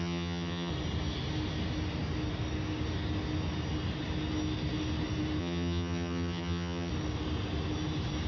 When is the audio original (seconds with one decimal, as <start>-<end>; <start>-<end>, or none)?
0.7-5.4; 6.9-8.3